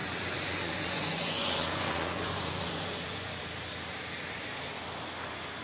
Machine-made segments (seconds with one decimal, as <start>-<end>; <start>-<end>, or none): 0.0-3.4